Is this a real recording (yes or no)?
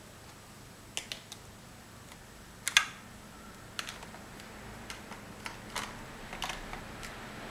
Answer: yes